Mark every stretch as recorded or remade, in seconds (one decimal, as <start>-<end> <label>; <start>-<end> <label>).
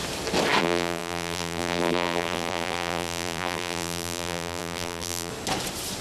0.0-0.6 recorded; 0.6-5.3 remade; 5.3-6.0 recorded